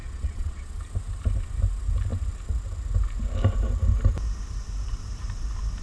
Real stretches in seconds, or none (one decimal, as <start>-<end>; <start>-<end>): 0.8-5.8